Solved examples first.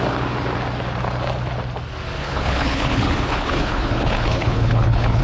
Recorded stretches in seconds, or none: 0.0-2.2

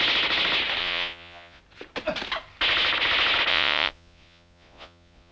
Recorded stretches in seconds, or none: 0.0-0.8; 1.6-3.5

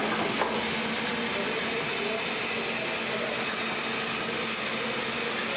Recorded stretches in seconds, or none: 0.0-5.6